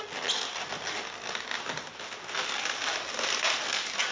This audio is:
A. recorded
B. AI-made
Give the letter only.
A